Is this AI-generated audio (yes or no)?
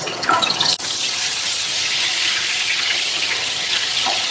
yes